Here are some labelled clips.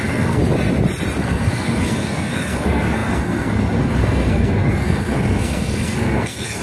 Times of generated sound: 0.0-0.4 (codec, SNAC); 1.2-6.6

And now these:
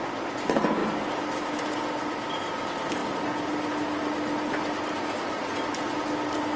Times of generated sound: none

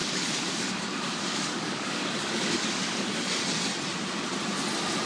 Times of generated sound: 0.0-3.1 (codec, DAC)

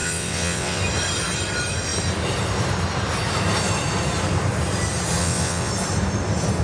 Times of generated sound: 0.0-0.8 (vocoder, WaveNeXt); 5.2-5.7

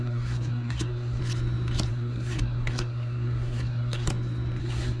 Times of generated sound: 0.0-1.2 (codec, SNAC); 1.9-4.1; 4.6-5.0

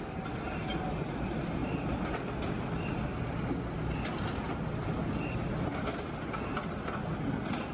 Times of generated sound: 1.6-2.9 (vocoder, BigVGAN v2)

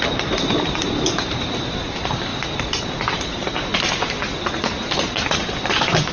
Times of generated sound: 0.0-6.1 (vocoder, BigVGAN v2)

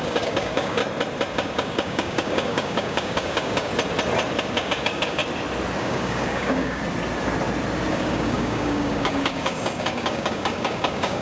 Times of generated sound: 0.0-0.8 (codec, DAC); 1.3-3.7; 4.4-5.2; 5.8-6.8; 7.9-11.2